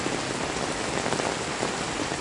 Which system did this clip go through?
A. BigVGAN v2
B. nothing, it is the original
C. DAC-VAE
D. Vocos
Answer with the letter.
B